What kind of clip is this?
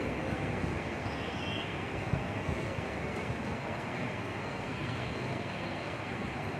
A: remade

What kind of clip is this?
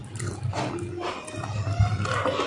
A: recorded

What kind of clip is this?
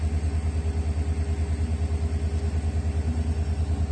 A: recorded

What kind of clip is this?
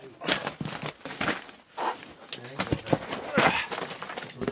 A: recorded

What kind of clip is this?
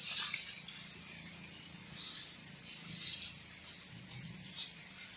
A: recorded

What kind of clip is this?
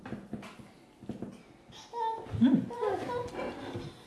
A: recorded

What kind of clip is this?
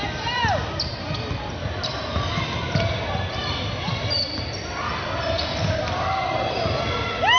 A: recorded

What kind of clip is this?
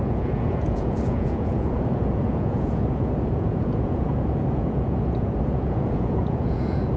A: remade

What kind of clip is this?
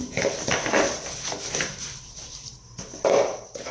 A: recorded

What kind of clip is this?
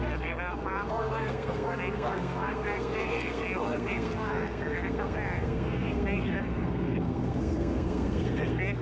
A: remade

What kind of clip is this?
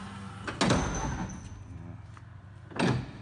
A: recorded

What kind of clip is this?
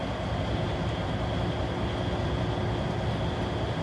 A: recorded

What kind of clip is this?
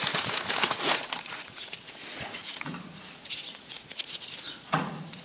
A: remade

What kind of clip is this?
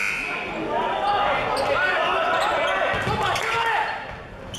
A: recorded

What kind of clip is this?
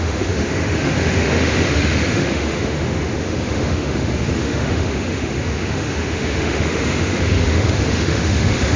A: remade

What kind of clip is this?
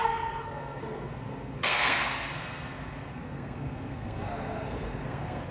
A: remade